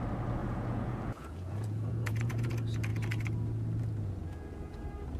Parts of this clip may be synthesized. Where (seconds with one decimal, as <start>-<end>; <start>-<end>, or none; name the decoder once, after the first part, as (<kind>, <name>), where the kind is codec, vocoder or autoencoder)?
0.4-2.5 (vocoder, Vocos); 4.2-4.8